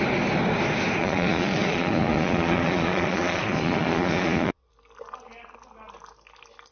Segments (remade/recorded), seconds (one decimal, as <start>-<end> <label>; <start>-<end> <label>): 0.0-1.0 recorded; 1.0-4.7 remade; 4.7-6.7 recorded